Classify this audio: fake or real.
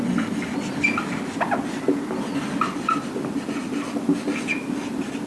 real